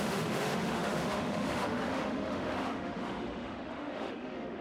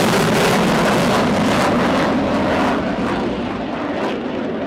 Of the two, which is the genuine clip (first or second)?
second